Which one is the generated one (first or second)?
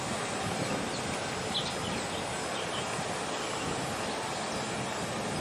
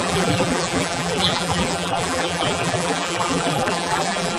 second